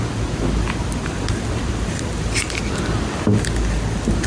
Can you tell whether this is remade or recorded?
recorded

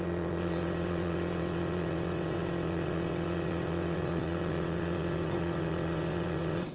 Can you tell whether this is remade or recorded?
remade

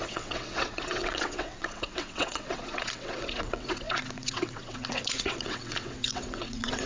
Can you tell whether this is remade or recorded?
remade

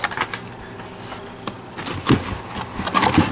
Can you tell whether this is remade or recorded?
recorded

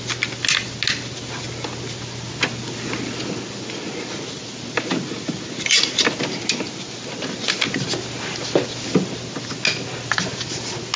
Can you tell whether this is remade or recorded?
recorded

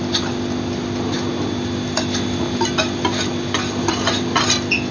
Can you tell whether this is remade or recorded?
recorded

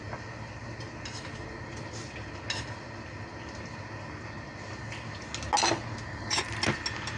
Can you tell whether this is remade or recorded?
recorded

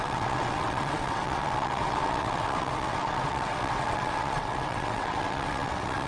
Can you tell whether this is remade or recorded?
remade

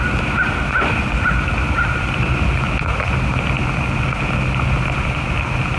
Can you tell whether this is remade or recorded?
recorded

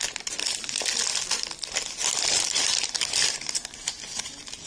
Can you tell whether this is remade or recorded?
recorded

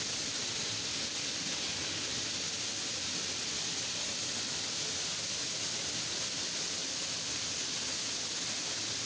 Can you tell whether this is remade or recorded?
recorded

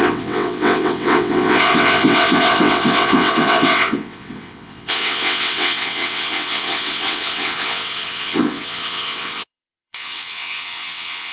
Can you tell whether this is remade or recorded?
remade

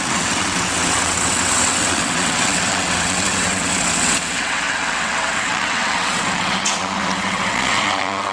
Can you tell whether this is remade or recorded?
remade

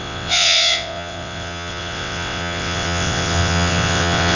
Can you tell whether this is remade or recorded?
remade